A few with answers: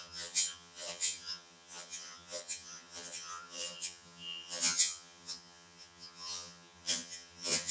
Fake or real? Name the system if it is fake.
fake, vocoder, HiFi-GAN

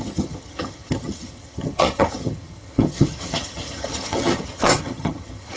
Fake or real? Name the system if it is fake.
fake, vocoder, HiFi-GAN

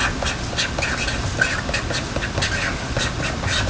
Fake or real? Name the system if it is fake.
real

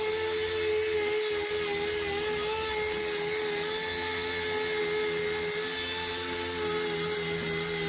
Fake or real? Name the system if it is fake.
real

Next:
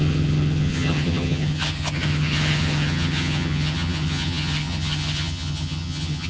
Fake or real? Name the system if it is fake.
fake, vocoder, HiFi-GAN